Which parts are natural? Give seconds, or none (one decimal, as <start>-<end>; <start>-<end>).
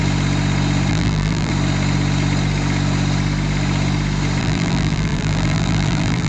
0.0-0.9; 1.5-4.4